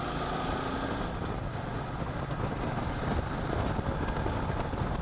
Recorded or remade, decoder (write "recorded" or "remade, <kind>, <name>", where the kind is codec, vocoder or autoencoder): recorded